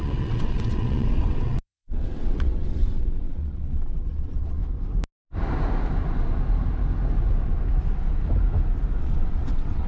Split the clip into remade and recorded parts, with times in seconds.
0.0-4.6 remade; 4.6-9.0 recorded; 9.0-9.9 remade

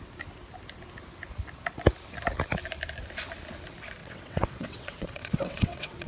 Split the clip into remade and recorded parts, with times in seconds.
0.0-4.0 recorded; 4.0-6.1 remade

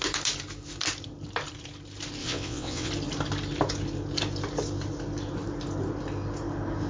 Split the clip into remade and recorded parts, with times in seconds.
0.0-2.2 recorded; 2.2-2.9 remade; 2.9-6.9 recorded